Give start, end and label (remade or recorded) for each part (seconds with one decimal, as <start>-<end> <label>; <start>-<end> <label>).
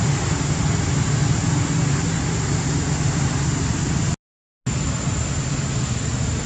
0.0-6.5 recorded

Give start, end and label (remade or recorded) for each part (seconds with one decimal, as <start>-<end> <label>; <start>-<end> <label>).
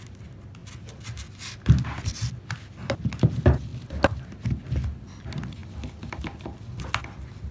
0.0-7.5 recorded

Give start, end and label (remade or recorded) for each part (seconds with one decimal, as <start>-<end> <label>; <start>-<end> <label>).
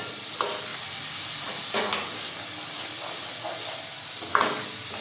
0.0-0.7 recorded; 0.7-1.8 remade; 1.8-5.0 recorded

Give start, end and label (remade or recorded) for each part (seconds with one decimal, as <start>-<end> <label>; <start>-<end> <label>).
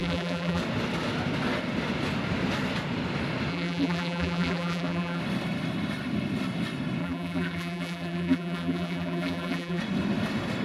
0.0-0.6 remade; 0.6-3.5 recorded; 3.5-5.2 remade; 5.2-7.0 recorded; 7.0-9.8 remade; 9.8-10.6 recorded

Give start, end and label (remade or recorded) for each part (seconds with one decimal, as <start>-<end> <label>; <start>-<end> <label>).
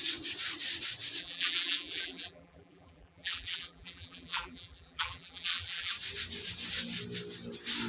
0.0-1.2 recorded; 1.2-5.9 remade; 5.9-7.9 recorded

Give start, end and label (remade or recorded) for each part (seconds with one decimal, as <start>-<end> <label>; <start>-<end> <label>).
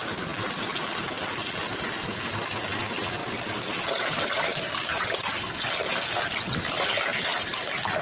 0.0-3.2 recorded; 3.2-6.1 remade; 6.1-8.0 recorded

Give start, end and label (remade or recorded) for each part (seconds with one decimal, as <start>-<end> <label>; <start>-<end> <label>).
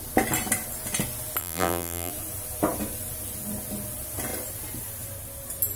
0.0-1.4 recorded; 1.4-2.1 remade; 2.1-5.8 recorded